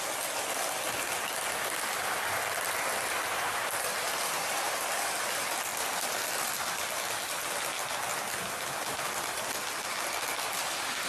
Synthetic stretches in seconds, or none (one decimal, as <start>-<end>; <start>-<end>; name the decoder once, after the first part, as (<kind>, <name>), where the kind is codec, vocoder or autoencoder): 5.7-6.2 (vocoder, BigVGAN v2)